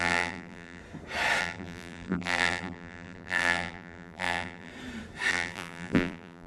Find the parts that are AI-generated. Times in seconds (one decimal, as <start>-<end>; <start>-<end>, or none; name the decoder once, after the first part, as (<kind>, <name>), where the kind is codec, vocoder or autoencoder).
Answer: 0.0-0.8 (vocoder, BigVGAN v2); 1.4-4.7; 5.3-6.5